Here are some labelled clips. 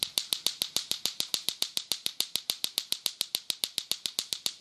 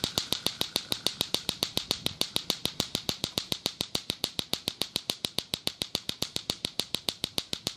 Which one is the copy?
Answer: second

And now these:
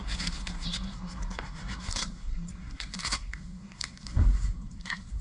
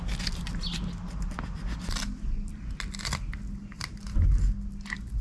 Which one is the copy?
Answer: first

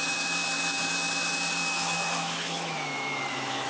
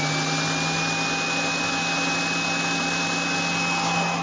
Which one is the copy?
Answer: first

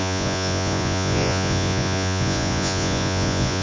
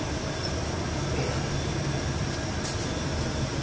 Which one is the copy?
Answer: first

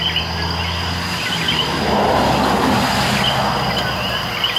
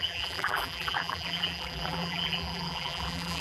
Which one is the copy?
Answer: second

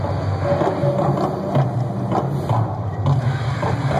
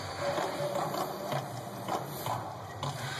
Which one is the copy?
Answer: second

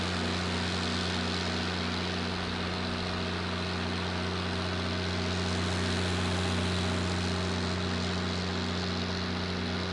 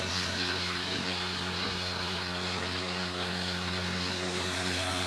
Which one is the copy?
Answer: second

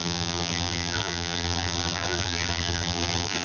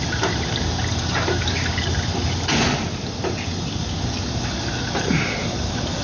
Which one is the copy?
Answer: first